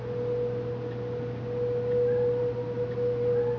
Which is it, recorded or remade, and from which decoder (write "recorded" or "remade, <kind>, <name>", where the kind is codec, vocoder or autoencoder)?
recorded